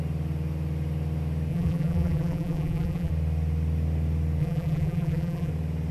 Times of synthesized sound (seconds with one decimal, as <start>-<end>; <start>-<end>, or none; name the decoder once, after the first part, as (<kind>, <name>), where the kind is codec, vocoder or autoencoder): 1.5-3.1 (vocoder, BigVGAN v2); 4.4-5.5

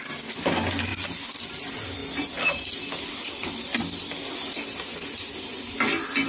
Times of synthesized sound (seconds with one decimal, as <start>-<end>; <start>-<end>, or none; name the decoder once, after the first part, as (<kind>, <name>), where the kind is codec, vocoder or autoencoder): 2.0-3.0 (vocoder, BigVGAN v2)